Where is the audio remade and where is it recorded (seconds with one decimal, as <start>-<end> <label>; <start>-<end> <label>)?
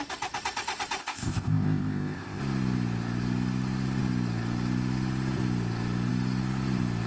0.0-1.0 recorded; 1.0-2.4 remade; 2.4-7.1 recorded